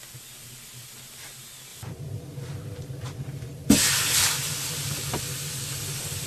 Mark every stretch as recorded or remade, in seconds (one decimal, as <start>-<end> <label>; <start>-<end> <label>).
0.0-1.7 recorded; 1.7-3.9 remade; 3.9-6.3 recorded